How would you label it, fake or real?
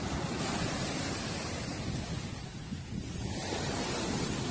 real